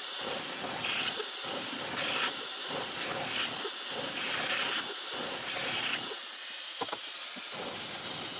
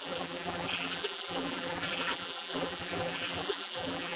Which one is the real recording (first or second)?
first